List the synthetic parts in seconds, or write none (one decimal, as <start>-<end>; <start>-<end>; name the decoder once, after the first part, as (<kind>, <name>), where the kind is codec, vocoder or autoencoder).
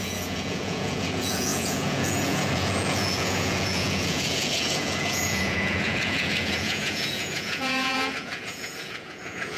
0.0-9.6 (vocoder, Vocos)